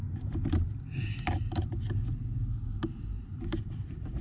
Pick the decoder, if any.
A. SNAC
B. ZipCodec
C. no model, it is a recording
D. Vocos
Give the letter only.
C